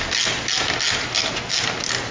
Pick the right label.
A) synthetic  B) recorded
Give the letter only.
B